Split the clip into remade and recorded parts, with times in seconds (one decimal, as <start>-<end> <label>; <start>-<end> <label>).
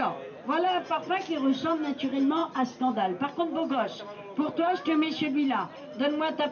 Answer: 0.0-6.5 recorded